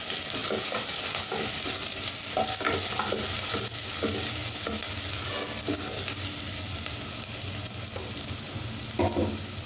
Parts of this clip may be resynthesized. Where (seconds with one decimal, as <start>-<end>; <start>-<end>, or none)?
none